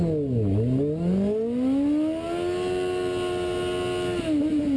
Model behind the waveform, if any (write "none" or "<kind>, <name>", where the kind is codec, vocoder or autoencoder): none